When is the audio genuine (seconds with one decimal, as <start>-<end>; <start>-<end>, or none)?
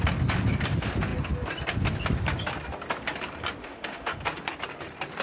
0.0-3.6; 4.2-5.2